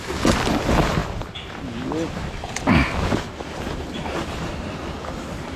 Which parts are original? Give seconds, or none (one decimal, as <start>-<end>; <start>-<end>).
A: 0.0-5.6